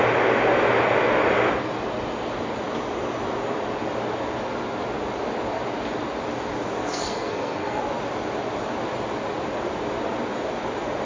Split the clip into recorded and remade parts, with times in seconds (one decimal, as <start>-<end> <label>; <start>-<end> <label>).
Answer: 0.0-6.8 recorded; 6.8-7.8 remade; 7.8-11.1 recorded